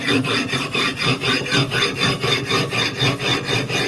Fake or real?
real